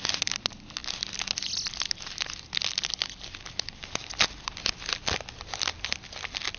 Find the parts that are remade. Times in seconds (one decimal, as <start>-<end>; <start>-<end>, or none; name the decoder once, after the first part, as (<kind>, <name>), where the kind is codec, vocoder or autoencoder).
none